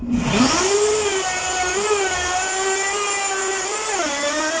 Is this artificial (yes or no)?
no